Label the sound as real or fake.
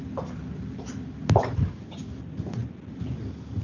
real